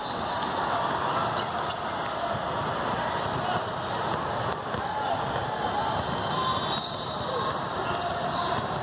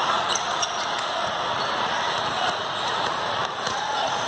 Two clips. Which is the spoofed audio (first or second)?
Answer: second